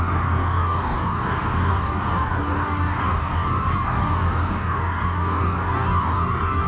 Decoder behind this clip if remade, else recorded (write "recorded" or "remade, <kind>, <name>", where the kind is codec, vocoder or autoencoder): remade, codec, DAC